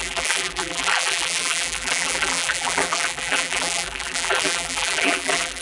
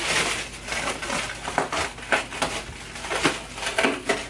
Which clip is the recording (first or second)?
second